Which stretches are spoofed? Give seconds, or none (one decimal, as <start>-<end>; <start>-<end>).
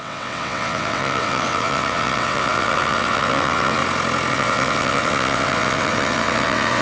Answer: 0.0-3.8; 4.3-6.8